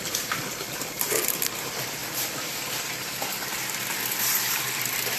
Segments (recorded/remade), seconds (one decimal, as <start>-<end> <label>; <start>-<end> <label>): 0.0-5.2 remade